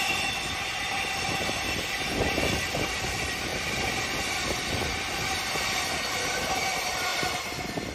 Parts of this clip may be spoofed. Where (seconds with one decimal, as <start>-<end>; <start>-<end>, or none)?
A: none